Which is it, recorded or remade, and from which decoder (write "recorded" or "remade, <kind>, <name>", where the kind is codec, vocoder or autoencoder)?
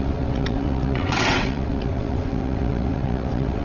remade, vocoder, WaveNeXt